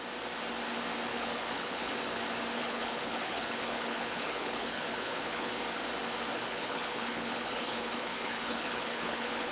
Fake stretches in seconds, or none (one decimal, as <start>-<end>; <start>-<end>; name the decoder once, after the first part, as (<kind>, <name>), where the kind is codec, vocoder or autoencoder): 1.1-1.9 (codec, HILCodec); 2.6-5.5; 6.3-9.5